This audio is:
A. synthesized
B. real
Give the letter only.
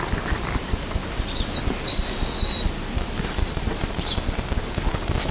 A